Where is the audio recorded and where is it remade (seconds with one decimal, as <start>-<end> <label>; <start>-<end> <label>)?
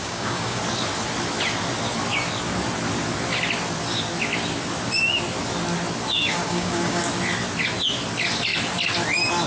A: 0.0-0.6 remade; 0.6-6.3 recorded; 6.3-7.0 remade; 7.0-9.5 recorded